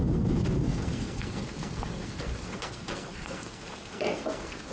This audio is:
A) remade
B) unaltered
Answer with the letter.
A